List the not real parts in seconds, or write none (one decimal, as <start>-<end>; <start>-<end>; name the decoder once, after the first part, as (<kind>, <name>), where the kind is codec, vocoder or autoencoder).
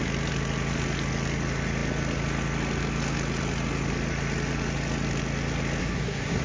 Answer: 5.8-6.4 (codec, SNAC)